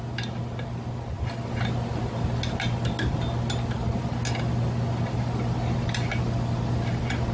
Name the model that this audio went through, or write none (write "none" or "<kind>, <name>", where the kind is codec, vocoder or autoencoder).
none